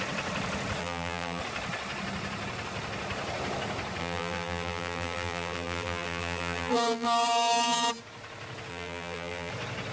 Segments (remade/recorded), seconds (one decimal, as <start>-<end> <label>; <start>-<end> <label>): 0.0-0.8 recorded; 0.8-1.4 remade; 1.4-4.0 recorded; 4.0-7.9 remade; 7.9-8.7 recorded; 8.7-9.5 remade; 9.5-9.9 recorded